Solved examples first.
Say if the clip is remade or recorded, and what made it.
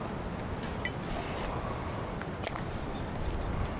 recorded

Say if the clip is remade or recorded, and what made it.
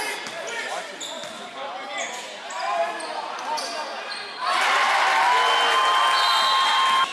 recorded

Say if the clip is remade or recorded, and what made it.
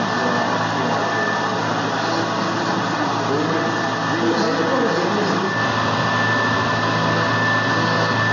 recorded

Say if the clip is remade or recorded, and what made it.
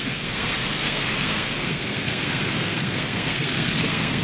remade, codec, SNAC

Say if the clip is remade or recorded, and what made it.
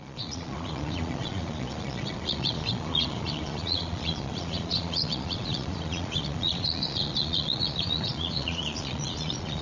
remade, vocoder, Vocos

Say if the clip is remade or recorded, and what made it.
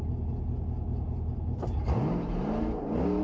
recorded